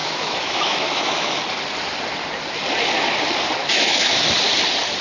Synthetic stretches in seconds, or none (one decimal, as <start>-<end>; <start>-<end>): 0.0-1.4; 3.6-4.1

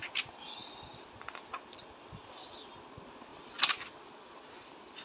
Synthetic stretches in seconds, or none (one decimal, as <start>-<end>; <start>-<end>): none

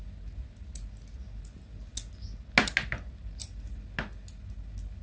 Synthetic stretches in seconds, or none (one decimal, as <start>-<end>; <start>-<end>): none

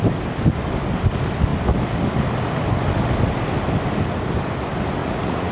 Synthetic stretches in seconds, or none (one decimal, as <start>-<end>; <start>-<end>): 5.0-5.5

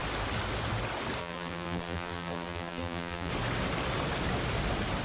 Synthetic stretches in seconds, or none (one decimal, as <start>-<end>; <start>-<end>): 1.2-3.3

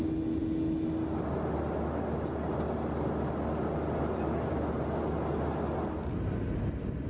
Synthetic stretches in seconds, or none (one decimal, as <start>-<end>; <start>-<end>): none

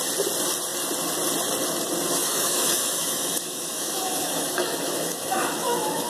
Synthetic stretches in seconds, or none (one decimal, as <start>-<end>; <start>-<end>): 2.2-6.1